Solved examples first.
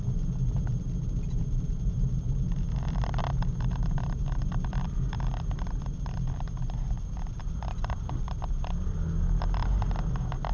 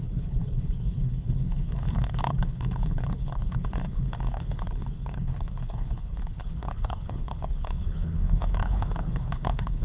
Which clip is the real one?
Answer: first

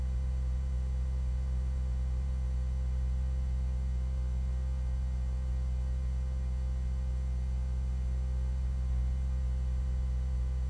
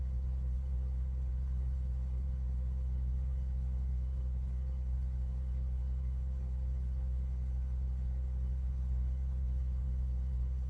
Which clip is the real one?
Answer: first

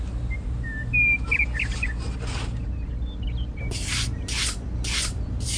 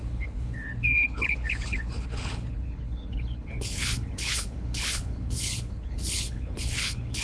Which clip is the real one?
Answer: first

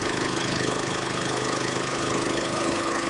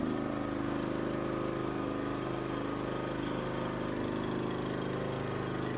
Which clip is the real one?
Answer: second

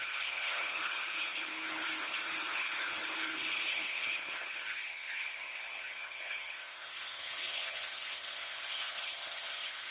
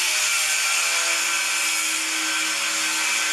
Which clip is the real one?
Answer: second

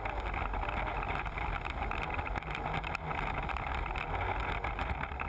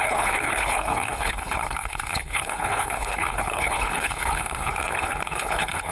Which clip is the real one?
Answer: first